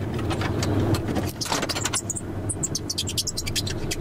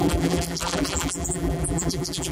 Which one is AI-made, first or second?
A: second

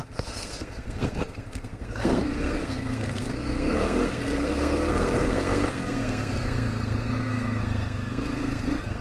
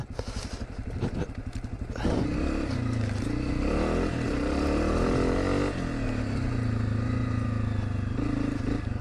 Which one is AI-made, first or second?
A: first